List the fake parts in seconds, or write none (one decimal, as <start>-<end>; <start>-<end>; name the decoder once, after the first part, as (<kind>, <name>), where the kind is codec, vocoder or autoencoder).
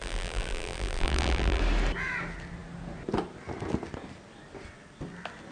0.0-1.6 (vocoder, BigVGAN v2)